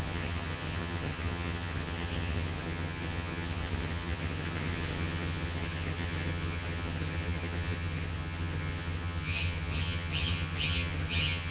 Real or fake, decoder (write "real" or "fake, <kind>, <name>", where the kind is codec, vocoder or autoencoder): fake, vocoder, HiFi-GAN